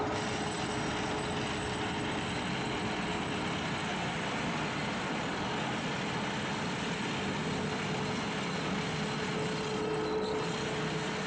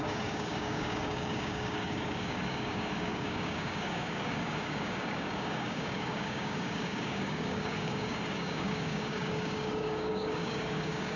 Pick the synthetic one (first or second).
second